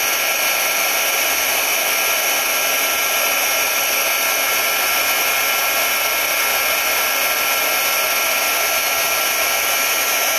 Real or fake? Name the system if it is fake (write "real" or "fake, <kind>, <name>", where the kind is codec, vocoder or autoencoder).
real